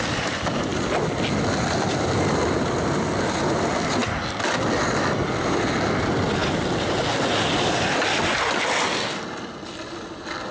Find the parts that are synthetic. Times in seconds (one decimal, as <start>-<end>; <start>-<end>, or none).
none